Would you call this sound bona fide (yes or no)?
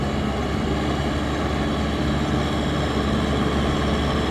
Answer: yes